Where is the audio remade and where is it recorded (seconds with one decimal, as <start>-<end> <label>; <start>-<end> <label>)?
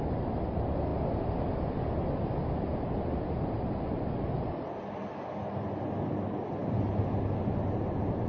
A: 0.0-8.3 recorded